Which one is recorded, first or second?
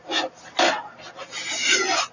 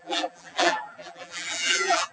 first